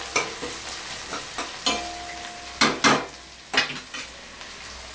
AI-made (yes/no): no